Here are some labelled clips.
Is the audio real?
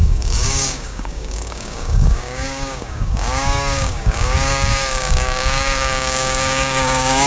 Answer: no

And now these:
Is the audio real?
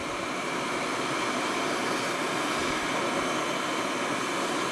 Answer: yes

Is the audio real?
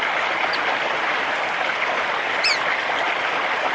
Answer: yes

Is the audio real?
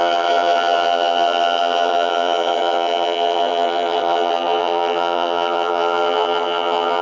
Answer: no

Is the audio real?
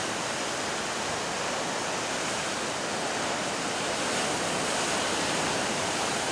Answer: yes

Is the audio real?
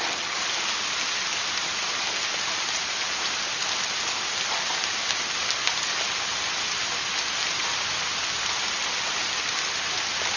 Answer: yes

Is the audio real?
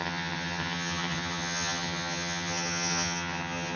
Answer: no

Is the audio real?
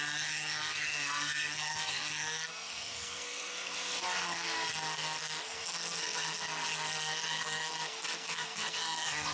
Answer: no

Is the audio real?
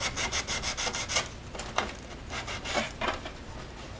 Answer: yes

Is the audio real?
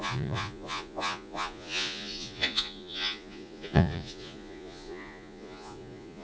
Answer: no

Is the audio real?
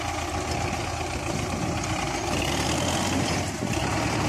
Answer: yes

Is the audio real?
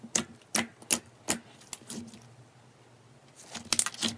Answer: yes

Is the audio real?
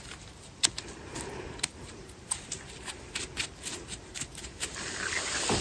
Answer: yes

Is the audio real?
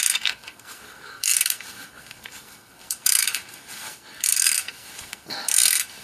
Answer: no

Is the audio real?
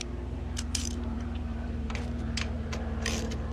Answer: no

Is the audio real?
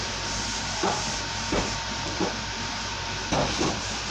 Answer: no